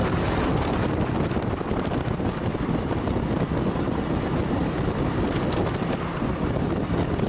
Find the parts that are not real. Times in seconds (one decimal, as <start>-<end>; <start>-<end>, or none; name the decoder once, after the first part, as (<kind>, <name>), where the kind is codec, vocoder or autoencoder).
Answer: none